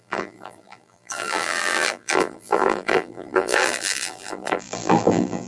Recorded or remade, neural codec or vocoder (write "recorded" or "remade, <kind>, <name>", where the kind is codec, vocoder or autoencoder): remade, vocoder, BigVGAN v2